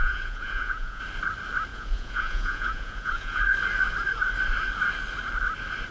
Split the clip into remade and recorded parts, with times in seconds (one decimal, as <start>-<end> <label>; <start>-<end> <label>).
0.0-1.0 remade; 1.0-1.7 recorded; 1.7-3.4 remade; 3.4-5.9 recorded